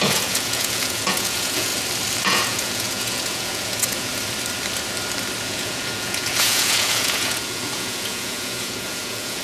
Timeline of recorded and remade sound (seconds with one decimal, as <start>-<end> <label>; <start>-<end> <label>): 0.0-1.7 remade; 1.7-2.2 recorded; 2.2-4.1 remade; 4.1-5.4 recorded; 5.4-9.4 remade